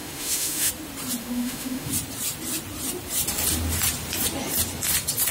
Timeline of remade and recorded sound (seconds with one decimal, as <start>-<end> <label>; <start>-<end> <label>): 0.0-0.7 remade; 0.7-1.2 recorded; 1.2-1.9 remade; 1.9-5.3 recorded